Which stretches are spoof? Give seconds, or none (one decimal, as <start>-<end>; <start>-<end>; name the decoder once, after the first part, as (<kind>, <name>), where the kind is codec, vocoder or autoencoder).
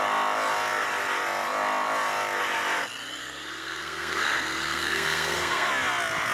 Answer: 3.2-5.7 (codec, SNAC)